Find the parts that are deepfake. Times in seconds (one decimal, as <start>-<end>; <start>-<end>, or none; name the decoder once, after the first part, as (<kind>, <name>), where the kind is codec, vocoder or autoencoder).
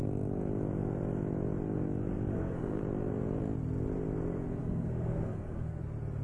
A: 2.3-2.8 (codec, SNAC); 4.6-5.8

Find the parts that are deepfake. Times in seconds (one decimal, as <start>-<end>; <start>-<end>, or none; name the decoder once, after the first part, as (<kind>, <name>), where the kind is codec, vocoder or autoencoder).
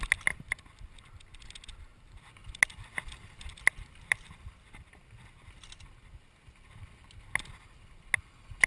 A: none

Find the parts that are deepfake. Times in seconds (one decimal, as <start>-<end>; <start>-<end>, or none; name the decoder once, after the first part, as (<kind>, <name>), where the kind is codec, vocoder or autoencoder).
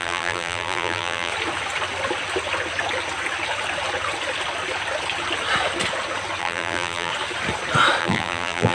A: 0.0-1.3 (vocoder, BigVGAN v2); 6.4-7.1; 8.0-8.7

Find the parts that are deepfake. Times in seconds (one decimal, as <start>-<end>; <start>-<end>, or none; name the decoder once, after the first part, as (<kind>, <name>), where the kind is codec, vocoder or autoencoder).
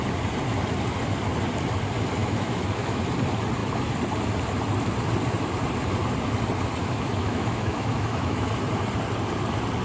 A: 2.2-3.0 (autoencoder, DAC-VAE); 6.8-8.5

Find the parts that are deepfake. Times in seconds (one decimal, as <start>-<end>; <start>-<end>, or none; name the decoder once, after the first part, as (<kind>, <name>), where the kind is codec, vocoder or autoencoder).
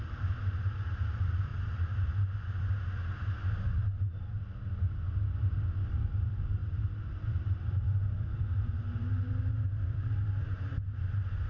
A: 0.0-1.5 (vocoder, BigVGAN v2); 5.4-11.5